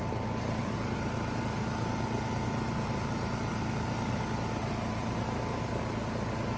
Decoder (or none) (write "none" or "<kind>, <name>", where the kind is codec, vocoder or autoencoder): vocoder, BigVGAN v2